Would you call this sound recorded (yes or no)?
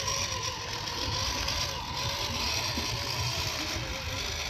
yes